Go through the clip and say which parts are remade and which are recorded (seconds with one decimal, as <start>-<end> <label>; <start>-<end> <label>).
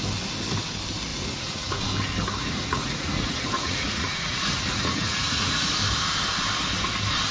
0.0-1.1 recorded; 1.1-1.8 remade; 1.8-2.4 recorded; 2.4-5.7 remade; 5.7-7.3 recorded